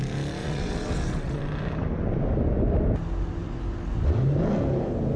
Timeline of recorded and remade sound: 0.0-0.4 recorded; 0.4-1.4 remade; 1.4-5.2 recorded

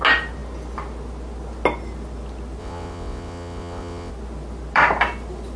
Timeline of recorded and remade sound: 0.0-2.6 recorded; 2.6-4.1 remade; 4.1-5.6 recorded

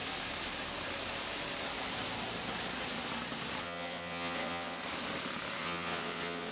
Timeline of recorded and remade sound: 0.0-3.6 recorded; 3.6-4.8 remade; 4.8-5.6 recorded; 5.6-6.5 remade

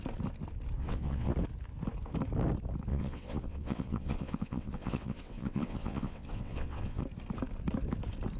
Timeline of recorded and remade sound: 0.0-0.8 recorded; 0.8-1.3 remade; 1.3-2.9 recorded; 2.9-7.0 remade; 7.0-8.4 recorded

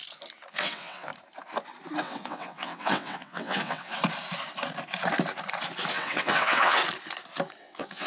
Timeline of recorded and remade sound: 0.0-0.5 recorded; 0.5-1.1 remade; 1.1-2.0 recorded; 2.0-3.9 remade; 3.9-5.9 recorded; 5.9-6.8 remade; 6.8-7.6 recorded; 7.6-8.1 remade

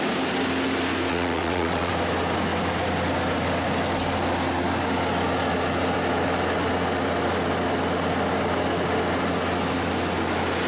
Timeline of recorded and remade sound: 0.0-1.1 recorded; 1.1-1.9 remade; 1.9-10.7 recorded

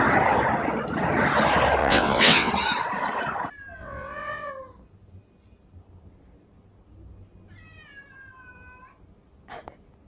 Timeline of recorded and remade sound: 0.0-1.8 recorded; 1.8-2.5 remade; 2.5-3.8 recorded; 3.8-4.5 remade; 4.5-10.1 recorded

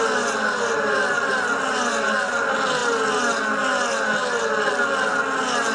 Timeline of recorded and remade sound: 0.0-5.7 recorded